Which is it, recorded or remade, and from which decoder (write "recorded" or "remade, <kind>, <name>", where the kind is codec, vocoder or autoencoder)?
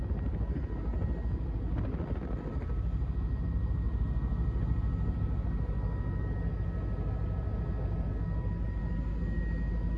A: recorded